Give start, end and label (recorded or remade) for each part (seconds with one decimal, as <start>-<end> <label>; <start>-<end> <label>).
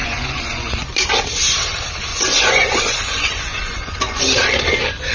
0.0-1.1 remade; 1.1-2.1 recorded; 2.1-4.2 remade; 4.2-5.1 recorded